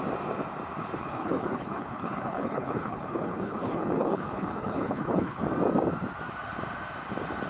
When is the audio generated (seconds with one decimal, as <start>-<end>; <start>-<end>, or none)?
1.0-5.4

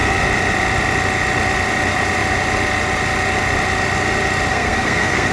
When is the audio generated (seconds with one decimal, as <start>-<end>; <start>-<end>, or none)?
4.5-5.3

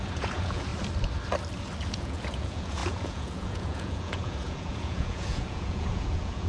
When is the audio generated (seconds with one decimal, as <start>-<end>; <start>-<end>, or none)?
0.0-0.7; 1.9-6.5